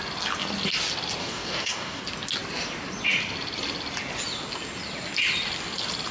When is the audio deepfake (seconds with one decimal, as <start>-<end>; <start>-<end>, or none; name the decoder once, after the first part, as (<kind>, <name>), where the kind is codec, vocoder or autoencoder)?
1.2-2.0 (codec, DAC)